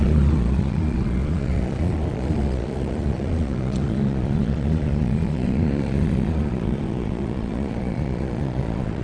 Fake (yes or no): yes